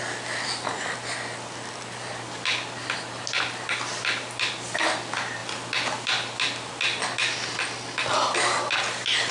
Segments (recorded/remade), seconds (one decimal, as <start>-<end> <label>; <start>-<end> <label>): 0.0-9.3 recorded